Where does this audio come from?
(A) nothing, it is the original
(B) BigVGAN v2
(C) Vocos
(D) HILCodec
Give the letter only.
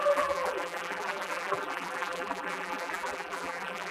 B